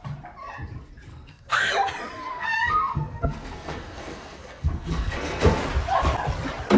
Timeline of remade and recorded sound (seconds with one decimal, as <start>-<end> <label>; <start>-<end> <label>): 0.0-1.1 recorded; 1.1-1.7 remade; 1.7-2.3 recorded; 2.3-5.6 remade; 5.6-6.8 recorded